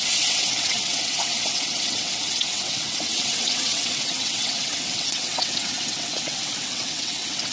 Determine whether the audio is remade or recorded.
remade